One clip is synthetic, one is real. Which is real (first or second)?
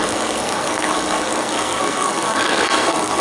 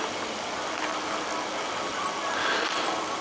second